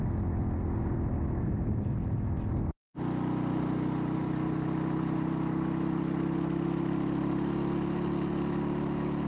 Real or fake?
real